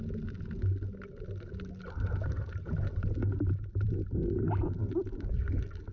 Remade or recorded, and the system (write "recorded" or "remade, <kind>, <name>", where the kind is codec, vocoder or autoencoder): recorded